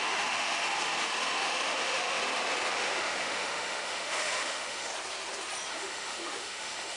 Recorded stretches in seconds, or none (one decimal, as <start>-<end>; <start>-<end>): 0.6-1.3; 2.2-2.7; 4.9-5.7